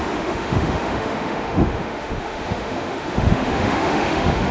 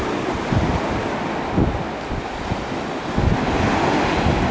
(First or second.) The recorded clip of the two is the second